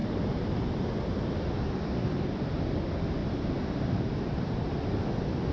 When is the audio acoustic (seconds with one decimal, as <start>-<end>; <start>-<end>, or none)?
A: 1.2-3.2; 4.7-5.5